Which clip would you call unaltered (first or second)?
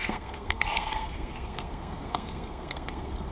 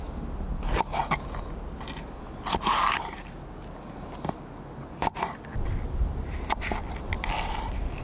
second